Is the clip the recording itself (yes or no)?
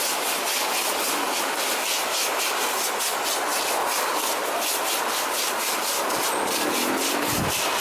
yes